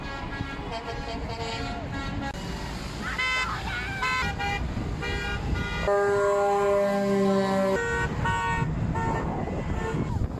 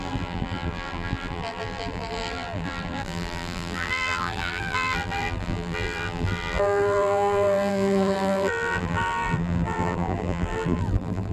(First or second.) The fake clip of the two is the second